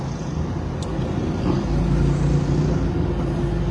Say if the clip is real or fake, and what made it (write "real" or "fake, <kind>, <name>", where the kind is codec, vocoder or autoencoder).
real